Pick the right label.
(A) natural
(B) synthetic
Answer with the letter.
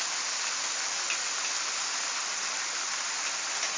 A